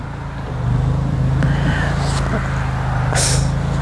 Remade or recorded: recorded